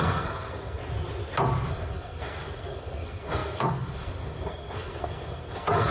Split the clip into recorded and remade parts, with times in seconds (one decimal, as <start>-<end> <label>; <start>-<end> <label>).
0.0-0.8 remade; 0.8-1.7 recorded; 1.7-5.9 remade